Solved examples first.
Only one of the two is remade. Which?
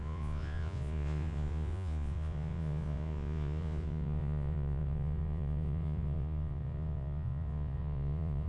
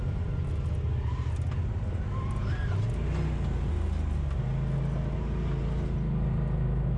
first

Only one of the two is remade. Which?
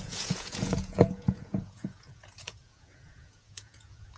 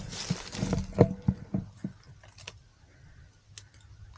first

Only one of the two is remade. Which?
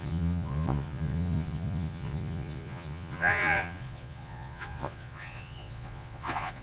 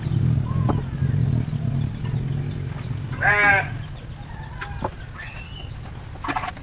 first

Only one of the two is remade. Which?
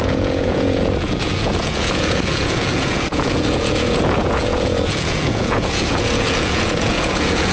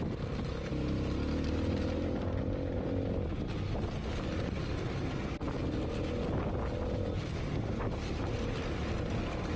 first